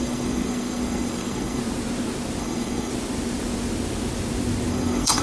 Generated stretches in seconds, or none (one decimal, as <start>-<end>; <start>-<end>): 0.0-1.6; 2.4-2.9; 4.7-5.2